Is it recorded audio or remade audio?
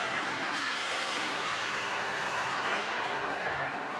remade